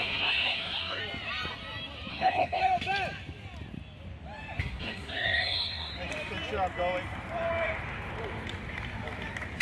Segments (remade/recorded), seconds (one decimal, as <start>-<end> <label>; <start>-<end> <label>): 0.0-1.0 remade; 1.0-2.1 recorded; 2.1-2.6 remade; 2.6-4.6 recorded; 4.6-5.9 remade; 5.9-9.6 recorded